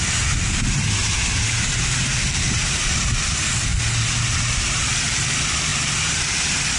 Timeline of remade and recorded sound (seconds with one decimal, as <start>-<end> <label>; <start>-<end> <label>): 0.0-1.0 recorded; 1.0-3.1 remade; 3.1-6.8 recorded